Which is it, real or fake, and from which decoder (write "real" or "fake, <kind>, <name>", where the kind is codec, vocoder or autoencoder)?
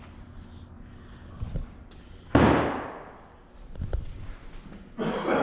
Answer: real